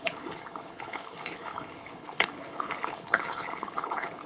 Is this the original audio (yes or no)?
no